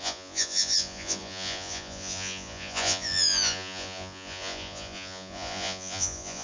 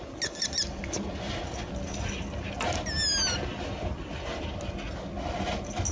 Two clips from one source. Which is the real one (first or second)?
second